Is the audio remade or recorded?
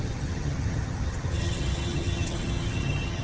remade